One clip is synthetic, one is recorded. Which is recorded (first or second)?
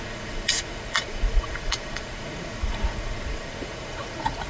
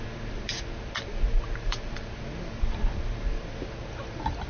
second